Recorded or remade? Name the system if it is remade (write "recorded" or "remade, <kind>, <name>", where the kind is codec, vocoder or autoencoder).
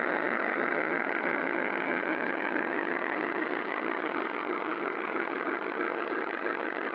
remade, vocoder, HiFi-GAN